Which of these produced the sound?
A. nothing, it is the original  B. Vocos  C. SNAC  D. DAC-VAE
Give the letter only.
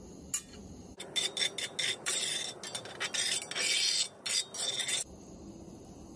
A